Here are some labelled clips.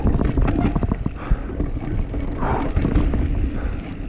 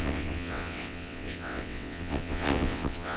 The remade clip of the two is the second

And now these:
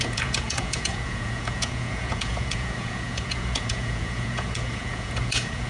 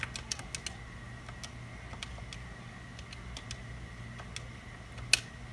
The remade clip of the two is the first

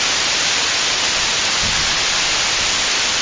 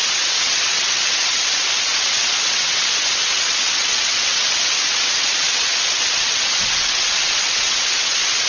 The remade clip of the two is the second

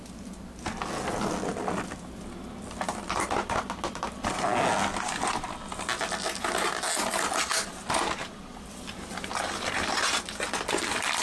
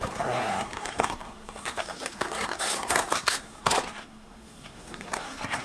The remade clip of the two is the second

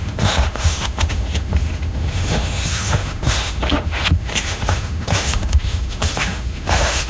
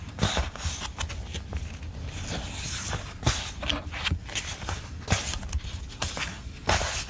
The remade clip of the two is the first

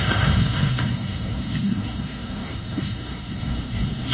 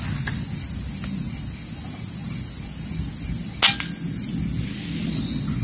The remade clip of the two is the first